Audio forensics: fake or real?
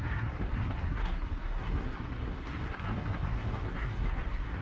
fake